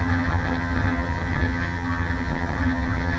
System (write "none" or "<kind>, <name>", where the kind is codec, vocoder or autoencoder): vocoder, HiFi-GAN